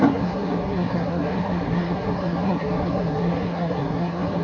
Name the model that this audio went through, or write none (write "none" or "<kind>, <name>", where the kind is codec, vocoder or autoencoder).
codec, SNAC